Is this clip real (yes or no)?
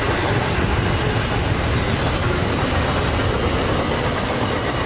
yes